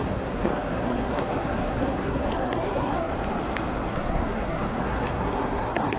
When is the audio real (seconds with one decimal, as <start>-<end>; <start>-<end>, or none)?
3.1-3.9